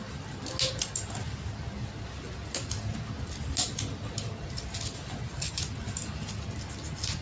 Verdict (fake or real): real